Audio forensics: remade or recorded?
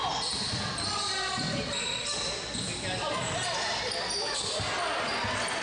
recorded